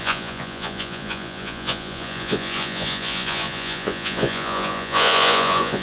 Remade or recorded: remade